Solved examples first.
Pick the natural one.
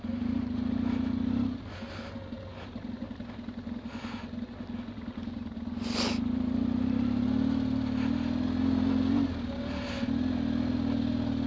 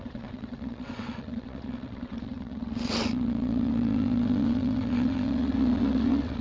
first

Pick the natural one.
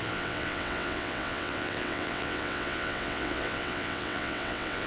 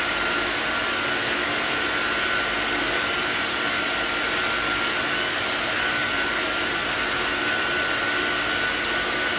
second